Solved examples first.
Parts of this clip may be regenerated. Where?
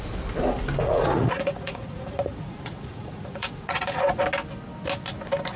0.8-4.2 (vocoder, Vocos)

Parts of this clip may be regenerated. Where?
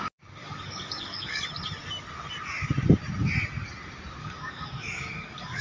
0.4-1.4 (codec, DAC); 4.2-5.6